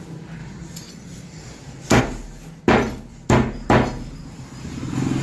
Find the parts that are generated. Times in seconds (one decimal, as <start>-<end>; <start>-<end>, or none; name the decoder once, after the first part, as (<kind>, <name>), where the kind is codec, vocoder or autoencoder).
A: 0.4-2.0 (vocoder, BigVGAN v2)